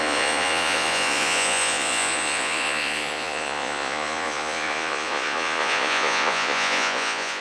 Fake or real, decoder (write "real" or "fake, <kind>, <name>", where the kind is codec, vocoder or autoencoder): fake, vocoder, Vocos